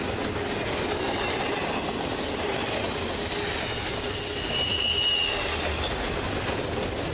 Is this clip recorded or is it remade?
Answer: recorded